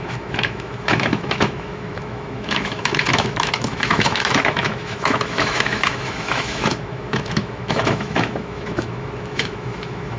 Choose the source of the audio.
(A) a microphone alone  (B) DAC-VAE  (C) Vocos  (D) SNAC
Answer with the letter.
B